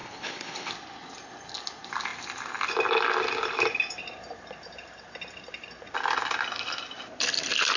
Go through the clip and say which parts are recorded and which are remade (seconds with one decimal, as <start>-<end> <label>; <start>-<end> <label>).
0.0-0.7 remade; 0.7-7.8 recorded